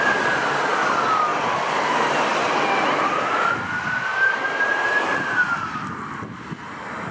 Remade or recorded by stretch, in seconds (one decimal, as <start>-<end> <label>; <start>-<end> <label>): 0.0-7.1 recorded